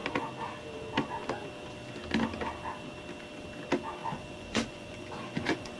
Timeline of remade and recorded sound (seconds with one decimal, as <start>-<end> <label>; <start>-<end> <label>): 0.0-4.0 recorded; 4.0-5.8 remade